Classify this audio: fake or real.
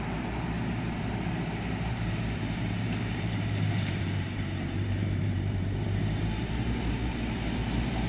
fake